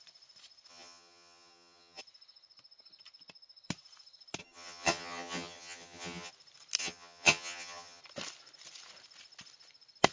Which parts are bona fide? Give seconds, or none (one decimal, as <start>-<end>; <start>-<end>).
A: 0.0-0.7; 2.0-4.4; 6.3-6.8; 8.0-10.1